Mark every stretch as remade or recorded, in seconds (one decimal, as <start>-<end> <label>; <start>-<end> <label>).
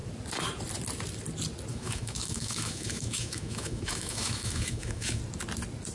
0.0-1.7 recorded; 1.7-5.2 remade; 5.2-5.9 recorded